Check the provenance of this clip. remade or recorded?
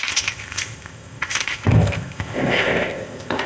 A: remade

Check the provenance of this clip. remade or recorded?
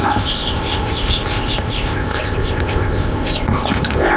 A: remade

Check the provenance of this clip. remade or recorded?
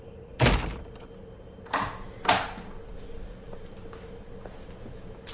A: recorded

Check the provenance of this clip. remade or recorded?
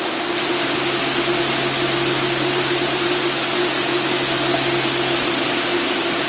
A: recorded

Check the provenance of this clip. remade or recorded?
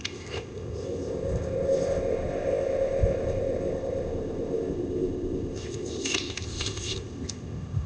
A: remade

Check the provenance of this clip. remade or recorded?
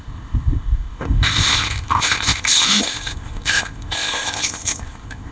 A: remade